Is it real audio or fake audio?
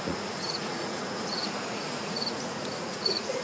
fake